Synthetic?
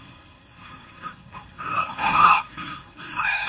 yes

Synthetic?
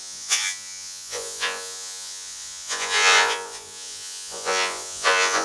yes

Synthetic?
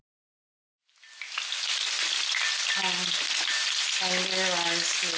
no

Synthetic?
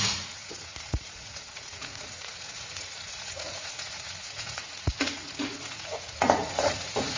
yes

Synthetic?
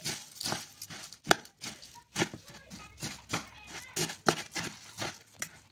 no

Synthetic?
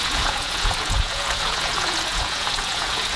yes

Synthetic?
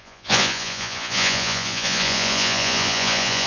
yes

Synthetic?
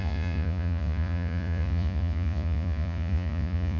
yes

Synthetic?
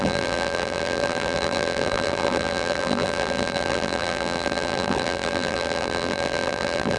yes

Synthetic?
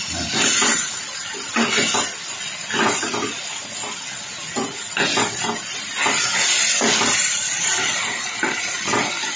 no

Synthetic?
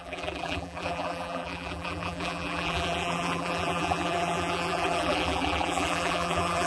yes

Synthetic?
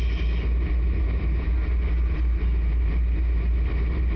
no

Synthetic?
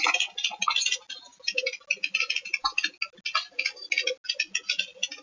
no